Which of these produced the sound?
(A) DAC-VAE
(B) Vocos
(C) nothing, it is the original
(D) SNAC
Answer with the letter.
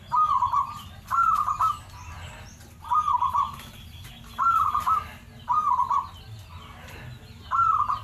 C